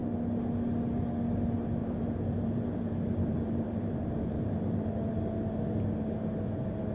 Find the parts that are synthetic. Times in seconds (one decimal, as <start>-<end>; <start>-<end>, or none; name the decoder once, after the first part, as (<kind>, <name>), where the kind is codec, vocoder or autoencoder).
1.8-5.1 (vocoder, BigVGAN v2)